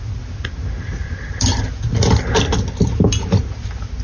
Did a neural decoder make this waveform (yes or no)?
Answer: no